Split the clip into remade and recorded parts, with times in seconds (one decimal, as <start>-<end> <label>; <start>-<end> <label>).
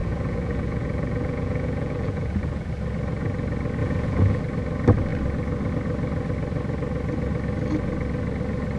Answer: 0.0-2.7 remade; 2.7-3.8 recorded; 3.8-4.4 remade; 4.4-8.8 recorded